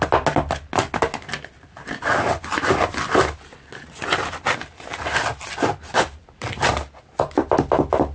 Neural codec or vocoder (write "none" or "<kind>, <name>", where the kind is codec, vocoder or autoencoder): none